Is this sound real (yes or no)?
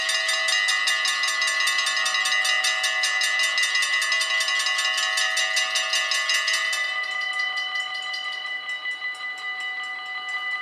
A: yes